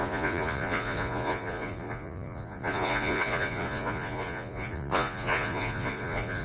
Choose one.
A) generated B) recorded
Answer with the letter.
A